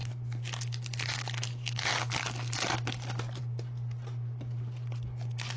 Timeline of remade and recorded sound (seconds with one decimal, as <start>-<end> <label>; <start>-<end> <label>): 0.0-5.6 recorded